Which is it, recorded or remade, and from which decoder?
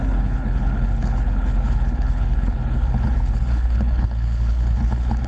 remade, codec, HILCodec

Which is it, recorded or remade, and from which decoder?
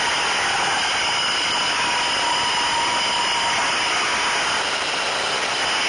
recorded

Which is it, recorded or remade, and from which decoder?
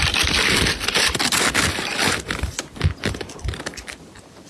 recorded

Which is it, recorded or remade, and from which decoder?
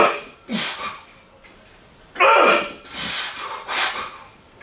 recorded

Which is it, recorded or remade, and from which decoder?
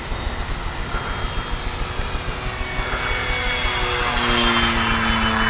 recorded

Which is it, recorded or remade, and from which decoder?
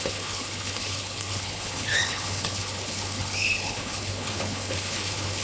remade, codec, HILCodec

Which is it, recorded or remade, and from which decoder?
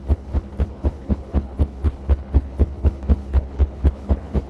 remade, codec, HILCodec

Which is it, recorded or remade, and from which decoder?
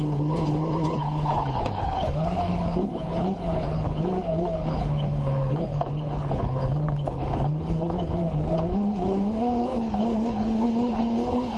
remade, codec, HILCodec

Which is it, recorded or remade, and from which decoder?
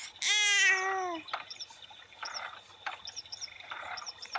recorded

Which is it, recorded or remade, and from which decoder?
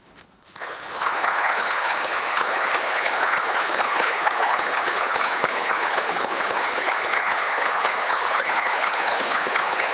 remade, codec, HILCodec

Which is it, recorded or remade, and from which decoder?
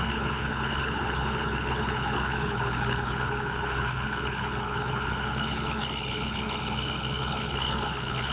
remade, codec, HILCodec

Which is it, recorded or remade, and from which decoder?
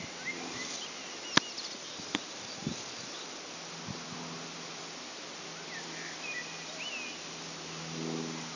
recorded